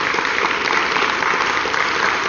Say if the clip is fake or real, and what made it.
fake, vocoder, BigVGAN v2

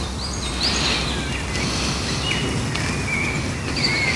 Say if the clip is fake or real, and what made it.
real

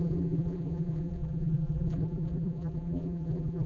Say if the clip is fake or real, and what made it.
fake, vocoder, BigVGAN v2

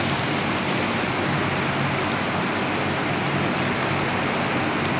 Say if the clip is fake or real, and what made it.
real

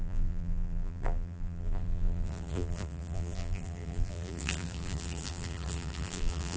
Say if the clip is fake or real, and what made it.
fake, vocoder, BigVGAN v2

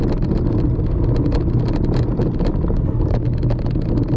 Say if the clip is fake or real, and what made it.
real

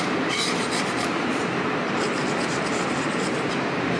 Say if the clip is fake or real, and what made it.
fake, vocoder, BigVGAN v2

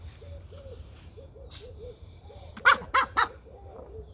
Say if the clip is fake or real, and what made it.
fake, vocoder, BigVGAN v2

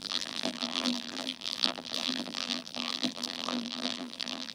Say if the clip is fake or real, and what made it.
fake, vocoder, BigVGAN v2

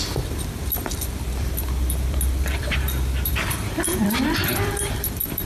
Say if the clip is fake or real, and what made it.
fake, vocoder, BigVGAN v2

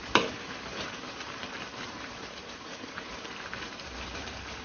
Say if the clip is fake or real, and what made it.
fake, vocoder, BigVGAN v2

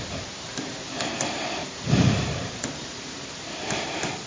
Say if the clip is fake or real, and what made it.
fake, vocoder, BigVGAN v2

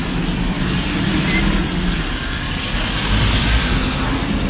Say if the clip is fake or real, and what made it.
real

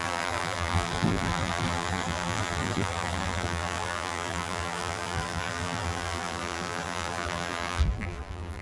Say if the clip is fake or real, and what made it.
fake, vocoder, BigVGAN v2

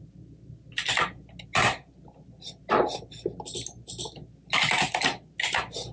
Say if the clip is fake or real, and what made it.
real